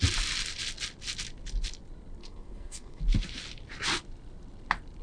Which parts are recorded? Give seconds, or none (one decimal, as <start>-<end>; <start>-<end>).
0.0-2.2; 3.0-5.0